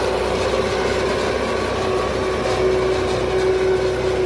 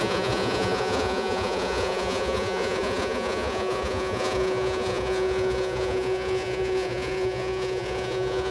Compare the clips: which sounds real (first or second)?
first